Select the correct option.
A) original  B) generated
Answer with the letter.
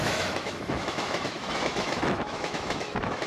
B